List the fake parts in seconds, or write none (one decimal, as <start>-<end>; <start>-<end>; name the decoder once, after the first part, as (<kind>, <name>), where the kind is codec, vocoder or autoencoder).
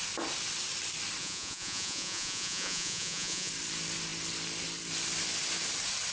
1.2-3.5 (vocoder, Vocos)